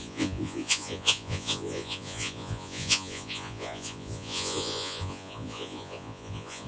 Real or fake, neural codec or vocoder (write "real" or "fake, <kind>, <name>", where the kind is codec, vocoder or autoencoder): fake, vocoder, Vocos